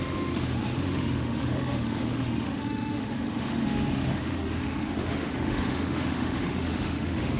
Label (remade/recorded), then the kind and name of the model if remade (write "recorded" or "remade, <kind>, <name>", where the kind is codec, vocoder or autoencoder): remade, autoencoder, DAC-VAE